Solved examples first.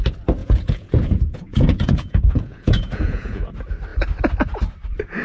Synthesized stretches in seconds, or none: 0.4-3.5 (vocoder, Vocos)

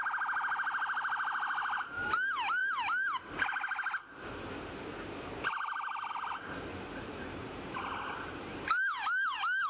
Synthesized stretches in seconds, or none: none

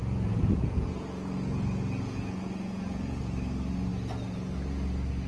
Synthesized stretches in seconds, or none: 0.0-3.2 (vocoder, Vocos)

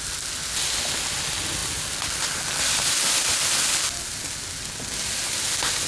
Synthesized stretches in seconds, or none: none

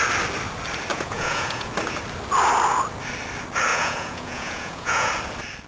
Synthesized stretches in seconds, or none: 0.9-1.7 (vocoder, Vocos); 3.7-5.1